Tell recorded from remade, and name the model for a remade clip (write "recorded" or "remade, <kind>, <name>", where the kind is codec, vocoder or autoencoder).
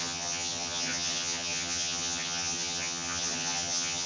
remade, vocoder, HiFi-GAN